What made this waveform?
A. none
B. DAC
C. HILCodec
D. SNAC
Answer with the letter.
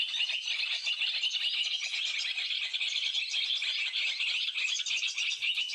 A